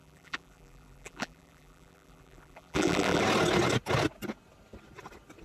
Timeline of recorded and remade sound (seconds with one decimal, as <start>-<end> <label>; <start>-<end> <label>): 0.0-3.2 remade; 3.2-5.4 recorded